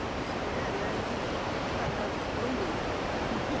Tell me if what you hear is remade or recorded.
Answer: remade